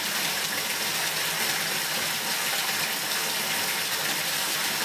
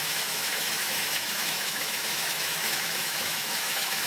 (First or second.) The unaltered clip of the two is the first